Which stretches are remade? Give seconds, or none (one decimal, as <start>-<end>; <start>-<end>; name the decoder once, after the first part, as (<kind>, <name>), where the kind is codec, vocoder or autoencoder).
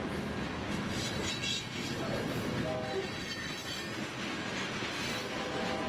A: none